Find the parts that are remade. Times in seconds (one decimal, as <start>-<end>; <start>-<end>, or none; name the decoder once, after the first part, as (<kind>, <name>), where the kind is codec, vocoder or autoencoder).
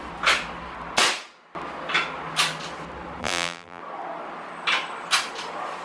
3.2-3.8 (vocoder, BigVGAN v2)